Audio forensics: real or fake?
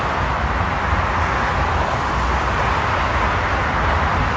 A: real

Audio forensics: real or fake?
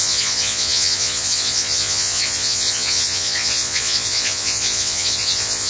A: fake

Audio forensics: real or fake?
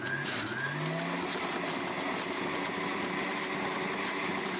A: real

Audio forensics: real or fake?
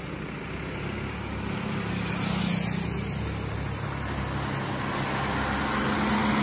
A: real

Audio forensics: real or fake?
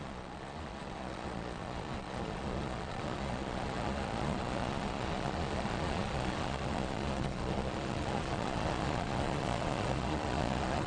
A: fake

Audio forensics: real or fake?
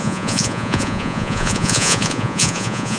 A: fake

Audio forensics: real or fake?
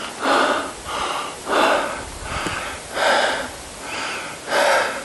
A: real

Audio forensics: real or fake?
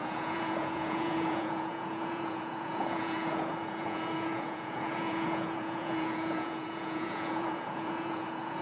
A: fake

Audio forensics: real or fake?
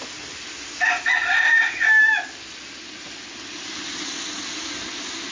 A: real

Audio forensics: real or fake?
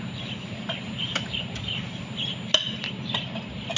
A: real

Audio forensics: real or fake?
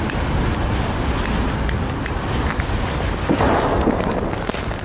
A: real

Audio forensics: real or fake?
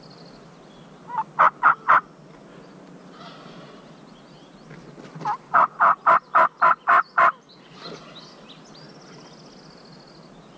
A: real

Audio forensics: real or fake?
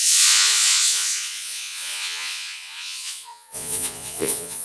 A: fake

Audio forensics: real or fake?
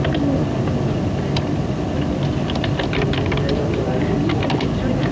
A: real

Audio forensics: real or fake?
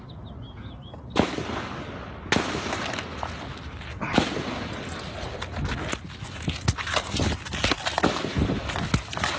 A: real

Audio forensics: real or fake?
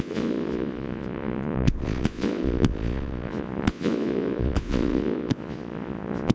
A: fake